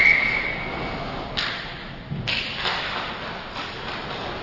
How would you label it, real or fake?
real